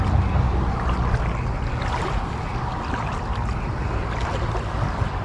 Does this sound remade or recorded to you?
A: recorded